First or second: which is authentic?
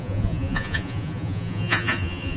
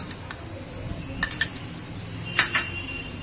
second